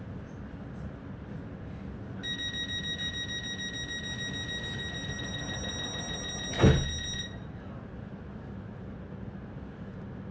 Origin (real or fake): real